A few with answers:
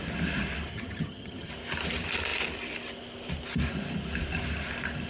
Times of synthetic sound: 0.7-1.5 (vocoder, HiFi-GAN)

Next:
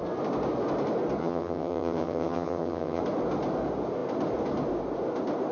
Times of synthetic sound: 1.2-3.0 (vocoder, HiFi-GAN)

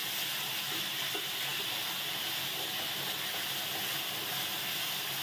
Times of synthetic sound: none

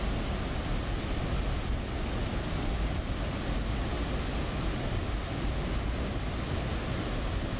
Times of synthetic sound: none

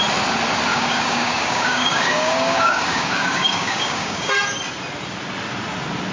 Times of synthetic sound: 0.7-4.3 (codec, DAC)

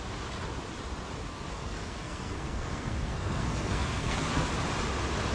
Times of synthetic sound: 1.3-4.5 (codec, SNAC)

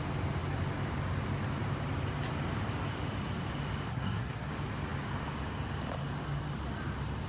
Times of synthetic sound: 3.9-4.5 (codec, SNAC)

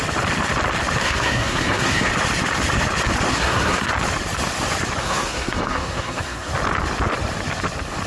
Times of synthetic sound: 1.0-2.1 (codec, SNAC); 3.3-3.9; 5.0-6.5